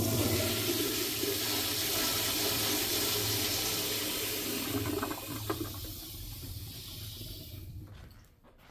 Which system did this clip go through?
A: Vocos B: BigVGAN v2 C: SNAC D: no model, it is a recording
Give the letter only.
B